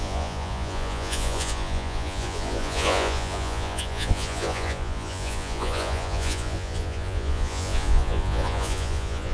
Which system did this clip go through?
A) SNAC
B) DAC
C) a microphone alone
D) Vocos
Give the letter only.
D